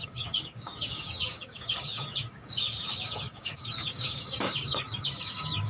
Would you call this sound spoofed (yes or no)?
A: yes